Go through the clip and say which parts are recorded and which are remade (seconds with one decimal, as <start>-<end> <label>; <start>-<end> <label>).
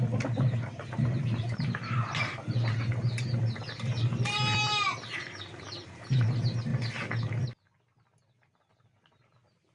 0.0-6.7 remade; 6.7-8.7 recorded; 8.7-9.7 remade